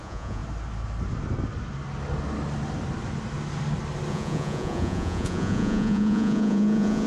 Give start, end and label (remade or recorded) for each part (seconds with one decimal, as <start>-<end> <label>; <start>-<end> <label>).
0.0-0.4 remade; 0.4-4.1 recorded; 4.1-7.1 remade